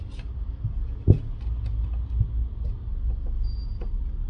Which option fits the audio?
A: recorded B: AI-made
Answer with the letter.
A